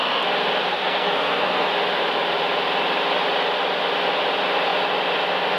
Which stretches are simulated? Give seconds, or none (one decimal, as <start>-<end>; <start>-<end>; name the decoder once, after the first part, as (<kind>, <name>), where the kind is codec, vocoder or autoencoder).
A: 0.6-1.7 (codec, SNAC)